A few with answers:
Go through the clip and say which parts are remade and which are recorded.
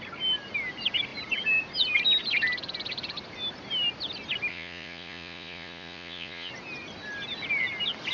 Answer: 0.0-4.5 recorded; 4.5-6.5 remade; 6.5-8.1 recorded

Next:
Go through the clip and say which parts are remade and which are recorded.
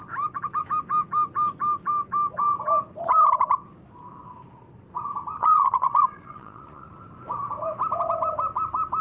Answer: 0.0-5.4 recorded; 5.4-6.9 remade; 6.9-9.0 recorded